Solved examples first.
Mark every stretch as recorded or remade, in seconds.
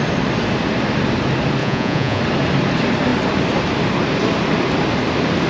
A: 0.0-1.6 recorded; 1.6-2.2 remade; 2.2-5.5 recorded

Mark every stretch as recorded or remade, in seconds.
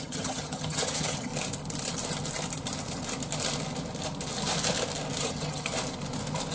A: 0.0-1.3 remade; 1.3-5.2 recorded; 5.2-5.7 remade; 5.7-6.5 recorded